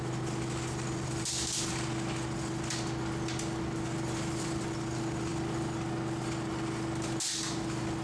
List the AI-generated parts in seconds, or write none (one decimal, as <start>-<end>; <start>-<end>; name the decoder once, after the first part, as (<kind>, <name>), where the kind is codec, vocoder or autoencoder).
none